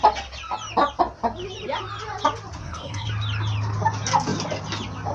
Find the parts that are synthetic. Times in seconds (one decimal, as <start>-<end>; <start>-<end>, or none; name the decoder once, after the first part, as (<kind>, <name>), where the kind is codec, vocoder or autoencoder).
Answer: 2.6-3.1 (codec, SNAC)

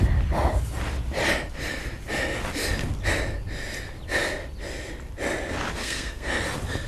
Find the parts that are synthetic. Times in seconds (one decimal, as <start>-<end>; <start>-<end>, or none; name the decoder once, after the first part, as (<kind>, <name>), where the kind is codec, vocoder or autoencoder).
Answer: 5.8-6.3 (codec, SNAC)

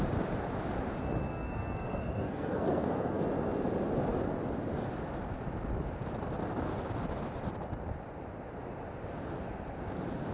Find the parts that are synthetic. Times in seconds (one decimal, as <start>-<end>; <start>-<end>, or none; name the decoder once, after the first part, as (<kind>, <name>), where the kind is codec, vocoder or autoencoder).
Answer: 1.3-3.2 (codec, SNAC)